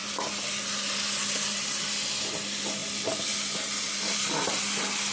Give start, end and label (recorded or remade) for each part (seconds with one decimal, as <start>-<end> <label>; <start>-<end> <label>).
0.0-5.1 recorded